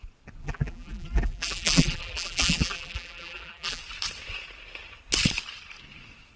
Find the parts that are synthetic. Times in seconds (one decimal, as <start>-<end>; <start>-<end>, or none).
0.4-3.8